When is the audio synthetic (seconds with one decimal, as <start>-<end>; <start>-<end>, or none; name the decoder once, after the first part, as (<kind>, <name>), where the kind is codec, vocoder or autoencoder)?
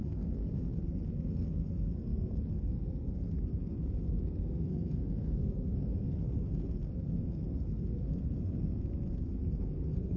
0.0-10.2 (codec, SNAC)